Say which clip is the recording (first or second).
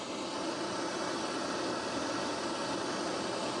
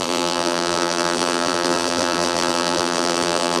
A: first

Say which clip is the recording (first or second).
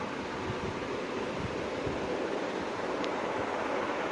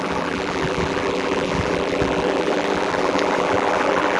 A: first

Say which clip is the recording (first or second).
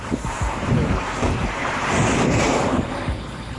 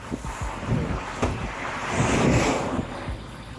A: second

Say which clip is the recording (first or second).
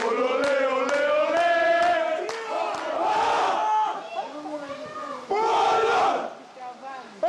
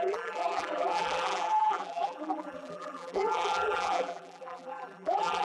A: first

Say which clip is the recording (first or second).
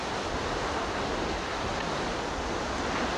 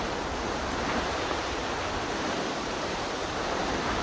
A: first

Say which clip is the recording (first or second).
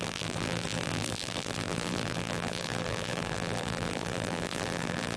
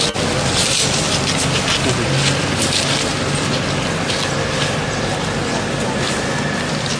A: second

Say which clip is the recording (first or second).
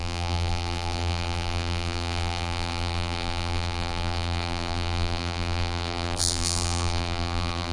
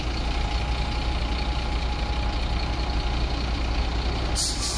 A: second